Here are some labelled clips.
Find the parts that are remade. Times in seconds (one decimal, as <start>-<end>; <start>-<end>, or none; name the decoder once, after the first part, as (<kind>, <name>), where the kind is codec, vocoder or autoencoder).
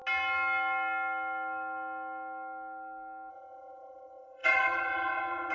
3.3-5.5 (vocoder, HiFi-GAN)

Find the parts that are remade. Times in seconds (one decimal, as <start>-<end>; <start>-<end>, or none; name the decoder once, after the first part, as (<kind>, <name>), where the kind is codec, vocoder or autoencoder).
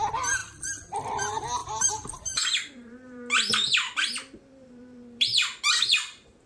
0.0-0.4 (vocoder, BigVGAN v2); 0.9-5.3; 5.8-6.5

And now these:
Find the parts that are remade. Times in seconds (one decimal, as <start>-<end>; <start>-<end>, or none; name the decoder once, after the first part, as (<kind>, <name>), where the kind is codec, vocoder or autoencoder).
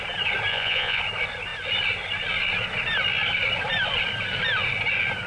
0.5-1.0 (vocoder, Vocos)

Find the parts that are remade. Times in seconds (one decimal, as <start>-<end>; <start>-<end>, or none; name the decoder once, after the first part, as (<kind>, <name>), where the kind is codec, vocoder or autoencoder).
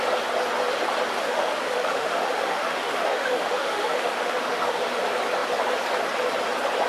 1.2-4.8 (autoencoder, DAC-VAE)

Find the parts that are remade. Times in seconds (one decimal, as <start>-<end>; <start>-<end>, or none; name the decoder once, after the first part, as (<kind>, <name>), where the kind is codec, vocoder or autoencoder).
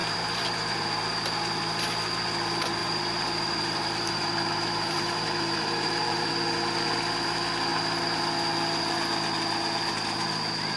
0.0-1.0 (vocoder, BigVGAN v2); 2.8-6.3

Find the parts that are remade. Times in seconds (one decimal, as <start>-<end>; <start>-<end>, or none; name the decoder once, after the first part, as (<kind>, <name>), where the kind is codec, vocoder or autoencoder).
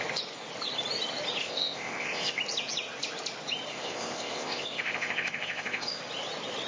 1.4-2.4 (codec, ZipCodec); 3.7-6.0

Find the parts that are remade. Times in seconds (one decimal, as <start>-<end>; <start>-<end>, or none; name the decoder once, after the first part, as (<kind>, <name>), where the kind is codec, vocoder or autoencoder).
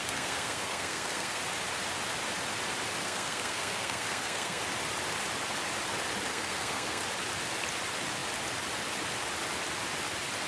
0.0-1.4 (codec, SNAC); 3.0-4.6; 6.3-7.0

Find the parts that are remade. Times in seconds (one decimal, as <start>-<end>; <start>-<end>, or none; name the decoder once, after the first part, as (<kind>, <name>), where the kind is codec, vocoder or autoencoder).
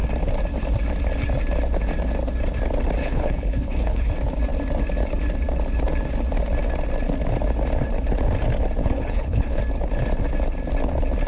3.0-4.1 (codec, HILCodec); 8.8-9.6